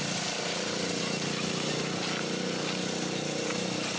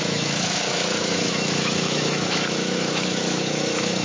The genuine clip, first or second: first